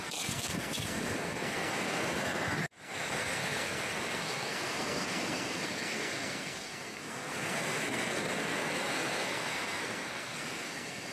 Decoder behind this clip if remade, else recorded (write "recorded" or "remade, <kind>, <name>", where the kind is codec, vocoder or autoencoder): remade, codec, SNAC